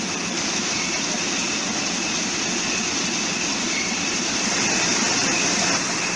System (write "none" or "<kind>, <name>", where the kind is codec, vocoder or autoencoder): none